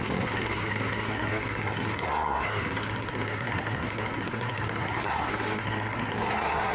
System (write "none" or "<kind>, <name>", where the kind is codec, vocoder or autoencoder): codec, SNAC